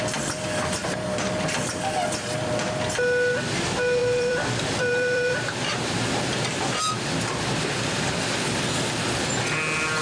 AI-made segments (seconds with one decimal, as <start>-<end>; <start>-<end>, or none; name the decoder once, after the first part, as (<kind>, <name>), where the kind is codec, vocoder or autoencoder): 4.0-5.3 (vocoder, BigVGAN v2)